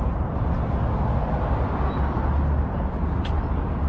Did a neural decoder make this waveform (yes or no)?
no